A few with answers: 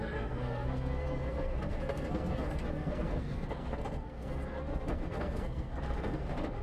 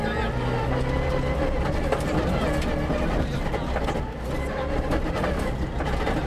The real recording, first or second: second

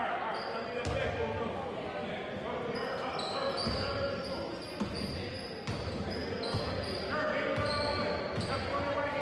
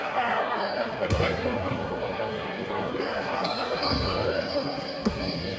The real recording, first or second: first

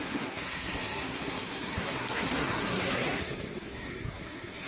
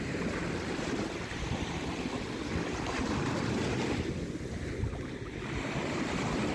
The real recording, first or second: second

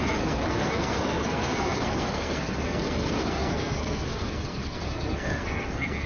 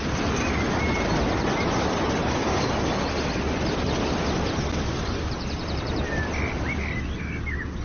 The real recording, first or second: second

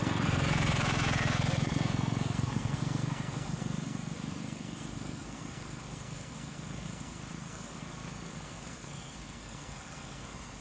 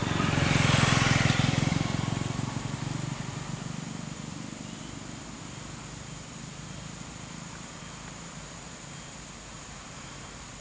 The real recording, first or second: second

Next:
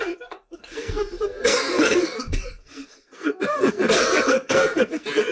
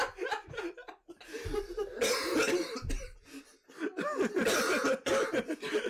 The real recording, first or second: second